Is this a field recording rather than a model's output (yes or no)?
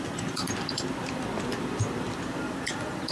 no